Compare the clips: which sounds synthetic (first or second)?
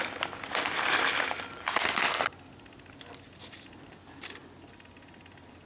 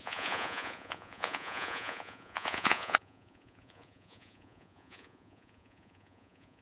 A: second